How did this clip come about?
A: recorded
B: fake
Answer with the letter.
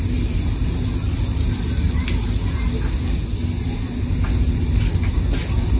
A